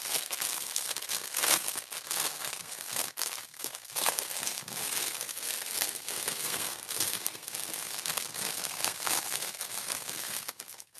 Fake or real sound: fake